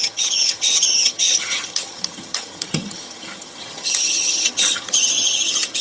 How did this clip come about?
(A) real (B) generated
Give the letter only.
B